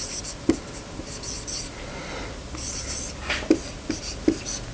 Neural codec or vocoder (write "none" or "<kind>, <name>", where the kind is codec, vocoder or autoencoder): none